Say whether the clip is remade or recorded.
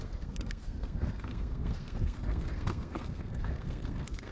remade